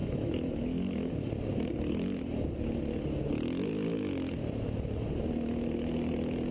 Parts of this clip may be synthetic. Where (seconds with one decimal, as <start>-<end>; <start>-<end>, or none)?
0.0-1.3